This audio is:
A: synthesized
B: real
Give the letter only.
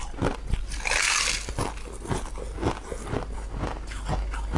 B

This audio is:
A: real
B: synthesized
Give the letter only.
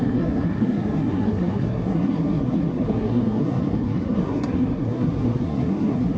B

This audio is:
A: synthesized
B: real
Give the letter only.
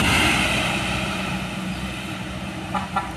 B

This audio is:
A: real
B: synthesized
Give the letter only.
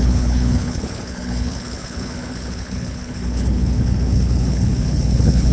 B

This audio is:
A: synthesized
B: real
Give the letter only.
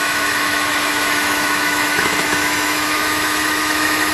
A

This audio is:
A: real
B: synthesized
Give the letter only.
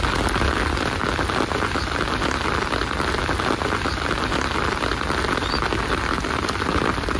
A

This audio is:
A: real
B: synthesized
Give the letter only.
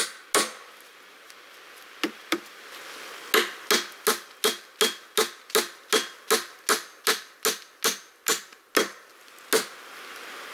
A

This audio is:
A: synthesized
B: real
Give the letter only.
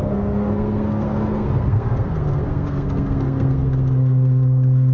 A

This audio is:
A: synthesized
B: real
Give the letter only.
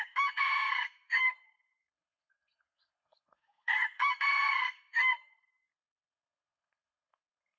A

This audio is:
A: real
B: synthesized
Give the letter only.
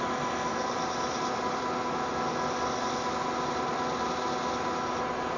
A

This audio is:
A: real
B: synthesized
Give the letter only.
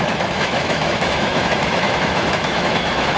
B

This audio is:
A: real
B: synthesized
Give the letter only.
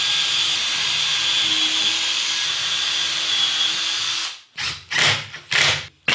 A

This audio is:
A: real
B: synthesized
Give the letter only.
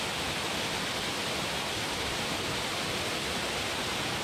A